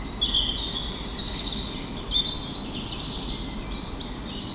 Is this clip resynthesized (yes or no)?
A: no